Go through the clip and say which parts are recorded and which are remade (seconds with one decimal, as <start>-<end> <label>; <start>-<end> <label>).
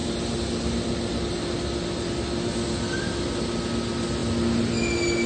0.0-5.3 recorded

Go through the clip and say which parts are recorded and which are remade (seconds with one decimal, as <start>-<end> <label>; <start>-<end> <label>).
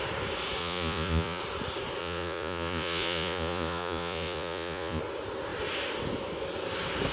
0.0-0.6 recorded; 0.6-1.4 remade; 1.4-2.0 recorded; 2.0-5.0 remade; 5.0-7.1 recorded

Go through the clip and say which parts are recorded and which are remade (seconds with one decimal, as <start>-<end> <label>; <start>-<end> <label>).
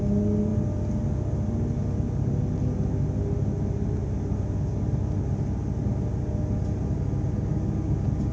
0.0-8.3 recorded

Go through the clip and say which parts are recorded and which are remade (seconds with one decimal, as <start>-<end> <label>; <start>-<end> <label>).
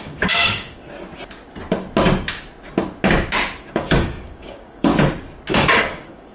0.0-0.8 remade; 0.8-3.6 recorded; 3.6-4.9 remade; 4.9-5.5 recorded; 5.5-6.3 remade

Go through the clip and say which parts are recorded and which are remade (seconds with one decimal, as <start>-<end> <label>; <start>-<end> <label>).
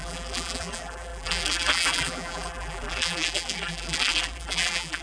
0.0-5.0 remade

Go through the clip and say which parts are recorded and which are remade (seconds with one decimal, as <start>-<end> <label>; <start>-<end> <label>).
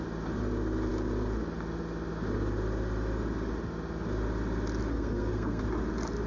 0.0-4.9 recorded; 4.9-5.6 remade; 5.6-6.3 recorded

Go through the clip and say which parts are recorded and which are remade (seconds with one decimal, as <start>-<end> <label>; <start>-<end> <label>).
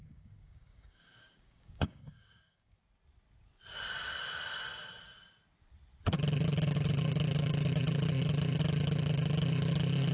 0.0-2.8 remade; 2.8-10.1 recorded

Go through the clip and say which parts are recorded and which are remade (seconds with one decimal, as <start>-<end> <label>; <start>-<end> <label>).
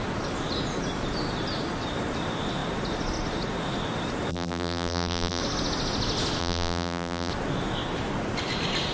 0.0-4.3 recorded; 4.3-5.4 remade; 5.4-6.4 recorded; 6.4-7.3 remade; 7.3-8.9 recorded